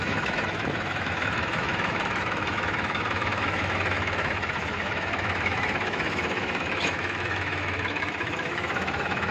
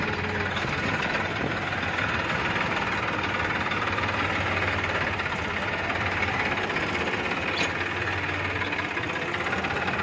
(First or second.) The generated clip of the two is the first